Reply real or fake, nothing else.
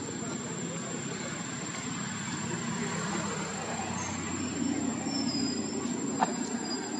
real